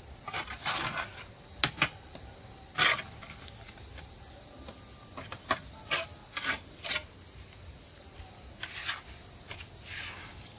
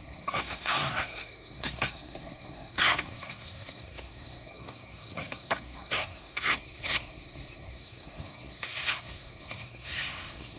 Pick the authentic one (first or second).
first